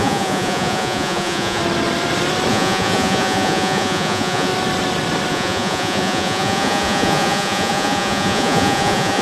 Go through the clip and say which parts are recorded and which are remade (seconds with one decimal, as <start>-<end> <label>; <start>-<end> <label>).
0.0-1.6 remade; 1.6-2.5 recorded; 2.5-4.5 remade; 4.5-5.3 recorded; 5.3-9.2 remade